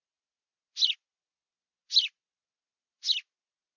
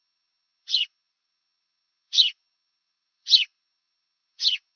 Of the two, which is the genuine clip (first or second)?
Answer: first